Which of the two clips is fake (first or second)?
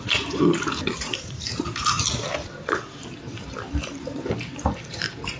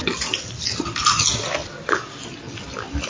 first